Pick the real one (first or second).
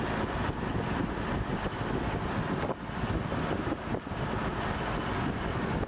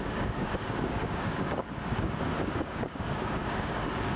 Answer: first